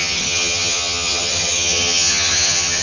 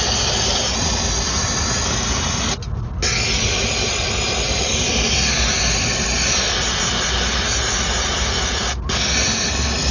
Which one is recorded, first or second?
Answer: second